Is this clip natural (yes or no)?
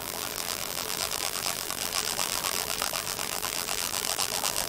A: no